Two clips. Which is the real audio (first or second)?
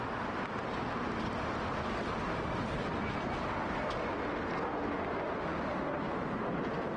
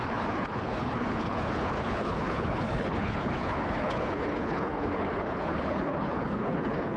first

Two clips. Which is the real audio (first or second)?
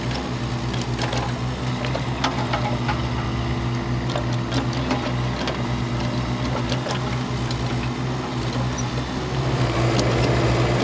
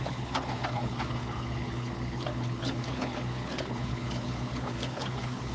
first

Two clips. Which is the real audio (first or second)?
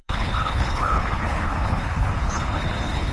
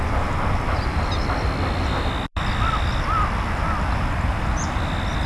second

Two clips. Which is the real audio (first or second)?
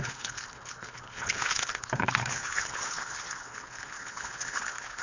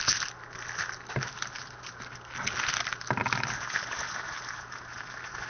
second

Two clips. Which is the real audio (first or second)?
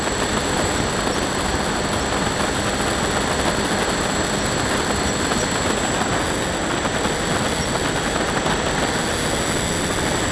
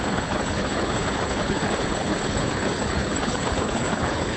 first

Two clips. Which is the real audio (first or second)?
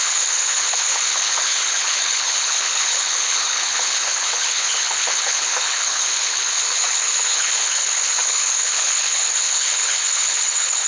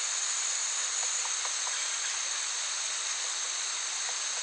second